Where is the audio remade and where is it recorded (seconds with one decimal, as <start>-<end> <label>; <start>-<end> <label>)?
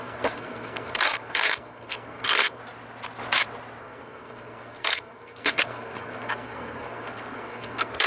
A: 0.0-2.6 remade; 2.6-3.8 recorded; 3.8-8.1 remade